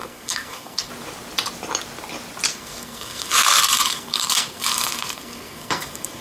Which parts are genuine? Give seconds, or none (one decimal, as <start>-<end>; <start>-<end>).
0.9-2.5

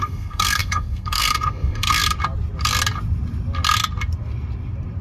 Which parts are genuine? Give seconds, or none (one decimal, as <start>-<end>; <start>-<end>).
2.0-5.0